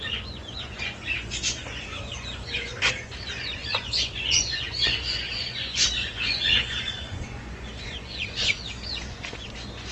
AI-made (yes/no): yes